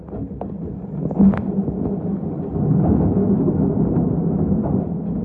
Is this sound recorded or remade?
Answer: recorded